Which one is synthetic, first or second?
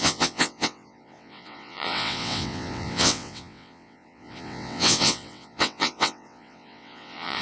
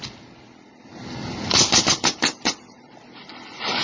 first